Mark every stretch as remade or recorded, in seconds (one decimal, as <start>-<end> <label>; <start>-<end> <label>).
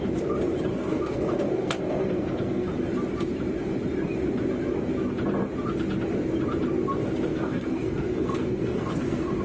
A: 0.0-0.7 recorded; 0.7-2.7 remade; 2.7-7.3 recorded; 7.3-9.4 remade